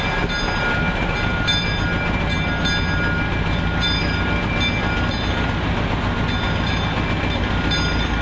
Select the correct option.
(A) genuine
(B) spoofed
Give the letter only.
A